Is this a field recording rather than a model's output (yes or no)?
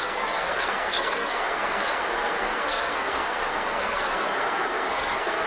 no